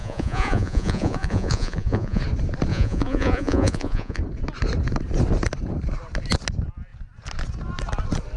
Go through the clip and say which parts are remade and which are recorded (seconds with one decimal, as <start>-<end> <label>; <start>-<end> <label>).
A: 0.0-2.2 remade; 2.2-2.7 recorded; 2.7-4.2 remade; 4.2-8.4 recorded

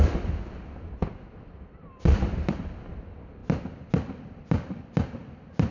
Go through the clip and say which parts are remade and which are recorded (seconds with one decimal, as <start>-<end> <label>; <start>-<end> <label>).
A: 0.0-5.7 recorded

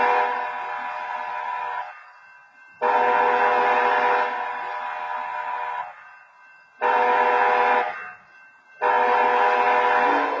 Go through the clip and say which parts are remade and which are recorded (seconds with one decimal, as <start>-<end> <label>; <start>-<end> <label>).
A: 0.0-10.4 recorded

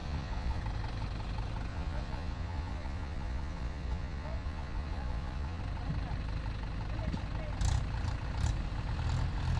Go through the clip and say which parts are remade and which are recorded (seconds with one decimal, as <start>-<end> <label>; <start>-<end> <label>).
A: 0.0-0.6 remade; 0.6-1.7 recorded; 1.7-5.6 remade; 5.6-9.6 recorded

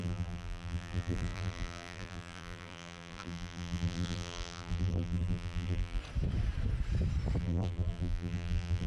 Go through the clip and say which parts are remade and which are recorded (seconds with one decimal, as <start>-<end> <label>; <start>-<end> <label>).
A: 0.0-6.0 remade; 6.0-7.4 recorded; 7.4-8.9 remade

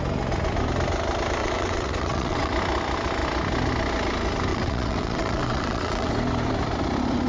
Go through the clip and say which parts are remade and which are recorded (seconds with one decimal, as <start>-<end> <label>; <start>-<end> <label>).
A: 0.0-1.4 recorded; 1.4-2.5 remade; 2.5-4.5 recorded; 4.5-6.1 remade; 6.1-7.3 recorded

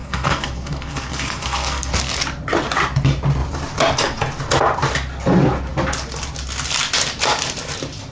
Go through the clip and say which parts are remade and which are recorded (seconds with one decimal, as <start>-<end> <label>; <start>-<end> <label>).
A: 0.0-1.9 remade; 1.9-8.1 recorded

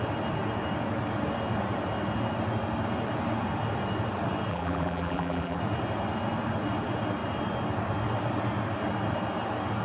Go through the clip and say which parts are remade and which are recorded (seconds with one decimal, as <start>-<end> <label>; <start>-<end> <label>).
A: 0.0-4.5 recorded; 4.5-5.6 remade; 5.6-9.8 recorded